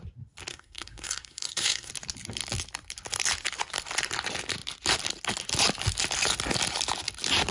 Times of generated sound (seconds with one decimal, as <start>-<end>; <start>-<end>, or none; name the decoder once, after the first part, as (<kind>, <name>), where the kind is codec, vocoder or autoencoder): 0.5-1.9 (codec, SNAC)